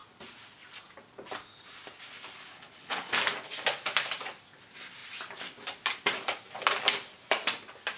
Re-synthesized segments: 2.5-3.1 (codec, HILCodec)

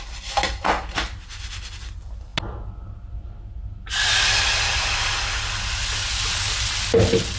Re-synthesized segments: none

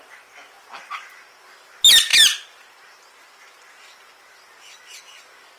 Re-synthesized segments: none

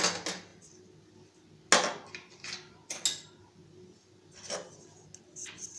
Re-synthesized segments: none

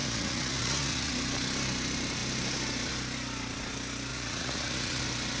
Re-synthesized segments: 0.0-1.1 (vocoder, Vocos); 4.1-5.0